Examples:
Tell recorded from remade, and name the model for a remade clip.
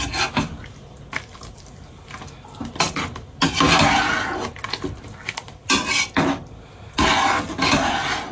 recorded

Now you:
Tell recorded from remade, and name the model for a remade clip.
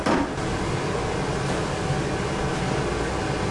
recorded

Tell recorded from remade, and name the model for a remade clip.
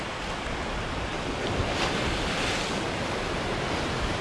recorded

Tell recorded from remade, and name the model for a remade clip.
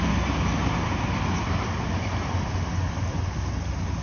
recorded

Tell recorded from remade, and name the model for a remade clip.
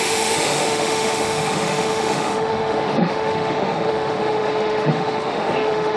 remade, autoencoder, DAC-VAE